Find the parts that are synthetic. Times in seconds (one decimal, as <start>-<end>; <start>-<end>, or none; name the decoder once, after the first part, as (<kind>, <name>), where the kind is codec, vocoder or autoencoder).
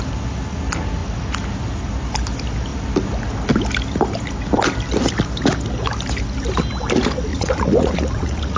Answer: 7.3-8.6 (vocoder, Vocos)